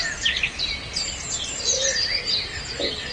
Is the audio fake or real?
real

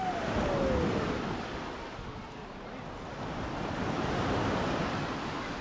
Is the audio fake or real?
real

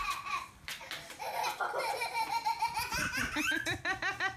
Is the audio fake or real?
real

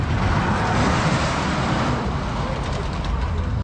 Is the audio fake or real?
fake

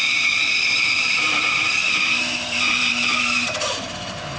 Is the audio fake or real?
fake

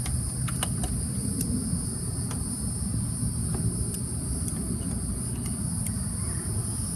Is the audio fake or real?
real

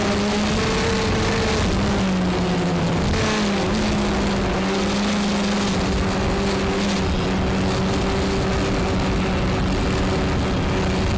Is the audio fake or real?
real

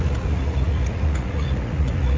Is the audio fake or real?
fake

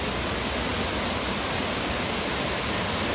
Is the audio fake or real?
real